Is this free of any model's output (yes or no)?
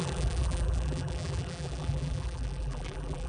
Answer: no